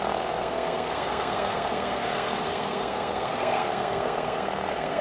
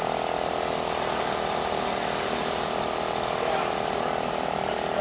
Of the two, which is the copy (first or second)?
first